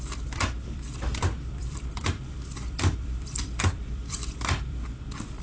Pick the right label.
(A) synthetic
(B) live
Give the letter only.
A